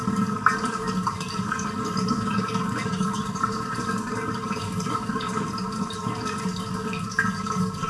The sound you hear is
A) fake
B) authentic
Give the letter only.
A